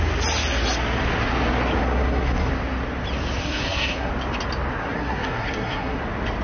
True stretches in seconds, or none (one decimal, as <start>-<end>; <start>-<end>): 0.0-1.8; 2.5-3.4; 4.1-4.8; 6.0-6.4